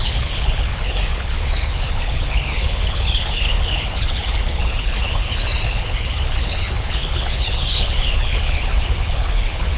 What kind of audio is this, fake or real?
fake